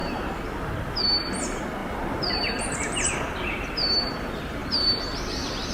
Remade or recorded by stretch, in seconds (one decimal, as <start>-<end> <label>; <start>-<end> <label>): 0.0-1.8 recorded; 1.8-4.1 remade; 4.1-5.7 recorded